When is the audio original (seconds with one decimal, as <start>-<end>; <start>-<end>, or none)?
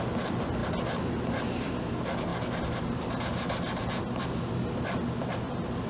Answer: 0.0-5.9